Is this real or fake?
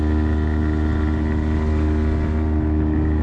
real